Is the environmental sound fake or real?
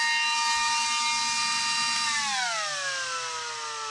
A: real